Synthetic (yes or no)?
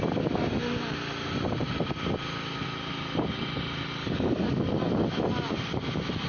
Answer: no